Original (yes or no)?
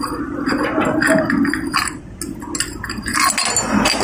yes